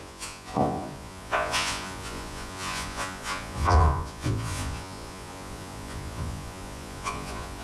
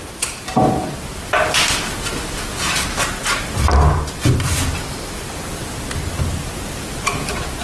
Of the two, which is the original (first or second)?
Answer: second